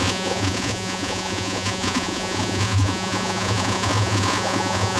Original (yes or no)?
no